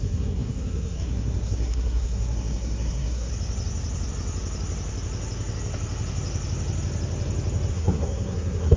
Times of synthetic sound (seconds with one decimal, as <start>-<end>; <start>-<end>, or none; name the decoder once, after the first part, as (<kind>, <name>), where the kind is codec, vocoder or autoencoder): 0.0-3.3 (codec, SNAC); 7.7-8.8